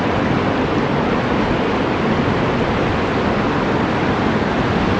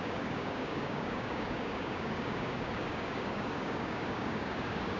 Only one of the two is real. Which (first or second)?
first